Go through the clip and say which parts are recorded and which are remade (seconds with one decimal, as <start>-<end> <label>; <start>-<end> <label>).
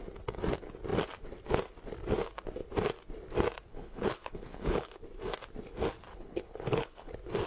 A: 0.0-3.7 recorded; 3.7-4.9 remade; 4.9-6.1 recorded; 6.1-7.1 remade; 7.1-7.5 recorded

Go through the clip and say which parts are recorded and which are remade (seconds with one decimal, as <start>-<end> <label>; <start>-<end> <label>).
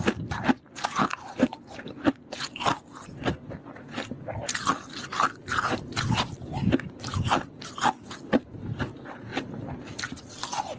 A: 0.0-10.8 recorded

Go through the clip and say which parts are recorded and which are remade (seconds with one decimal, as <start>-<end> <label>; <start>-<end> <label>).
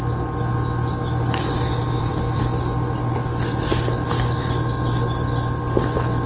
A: 0.0-1.8 recorded; 1.8-2.4 remade; 2.4-6.3 recorded